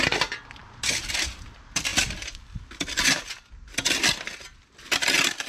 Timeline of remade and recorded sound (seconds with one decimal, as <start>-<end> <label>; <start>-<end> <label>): 0.0-0.6 recorded; 0.6-1.4 remade; 1.4-5.5 recorded